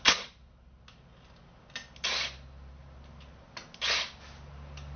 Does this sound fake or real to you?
real